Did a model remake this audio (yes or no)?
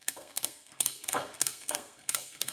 yes